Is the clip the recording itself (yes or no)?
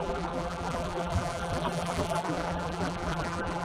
no